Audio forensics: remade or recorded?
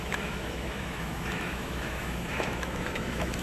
remade